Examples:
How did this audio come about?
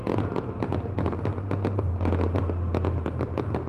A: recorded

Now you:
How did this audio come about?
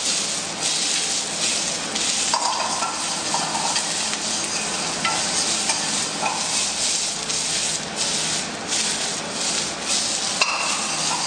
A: recorded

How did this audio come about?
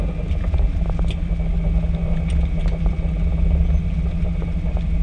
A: recorded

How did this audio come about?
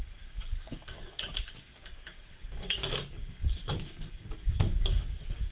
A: remade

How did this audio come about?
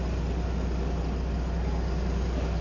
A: recorded